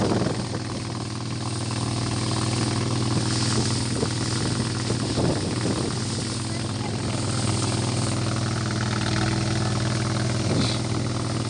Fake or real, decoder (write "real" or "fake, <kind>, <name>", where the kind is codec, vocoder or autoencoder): real